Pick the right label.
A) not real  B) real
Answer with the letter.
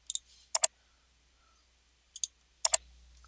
B